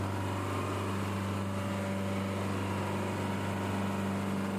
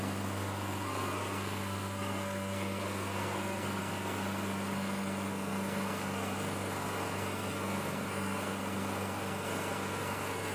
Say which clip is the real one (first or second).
first